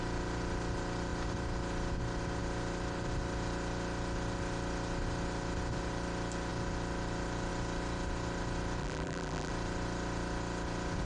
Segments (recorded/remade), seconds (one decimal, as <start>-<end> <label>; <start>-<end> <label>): 0.0-8.8 recorded; 8.8-9.5 remade; 9.5-11.1 recorded